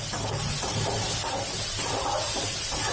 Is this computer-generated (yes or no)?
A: no